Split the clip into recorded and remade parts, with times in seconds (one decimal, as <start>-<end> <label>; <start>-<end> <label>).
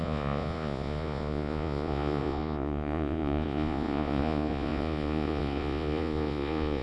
0.0-6.8 remade